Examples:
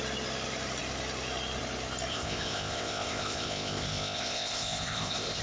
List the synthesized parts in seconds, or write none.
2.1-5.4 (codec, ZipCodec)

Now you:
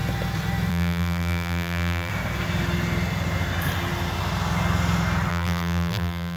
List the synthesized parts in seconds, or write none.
0.7-2.1 (vocoder, BigVGAN v2); 5.3-6.4

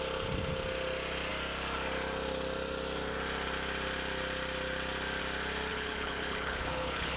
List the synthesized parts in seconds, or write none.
5.7-7.2 (codec, HILCodec)

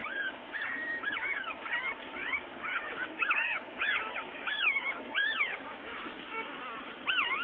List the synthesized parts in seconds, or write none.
0.0-1.7 (codec, DAC); 2.2-6.6

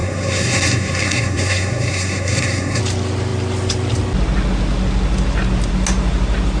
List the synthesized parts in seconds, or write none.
0.0-2.8 (codec, SNAC)